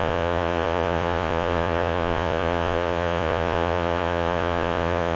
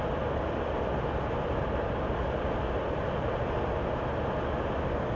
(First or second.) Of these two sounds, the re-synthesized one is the first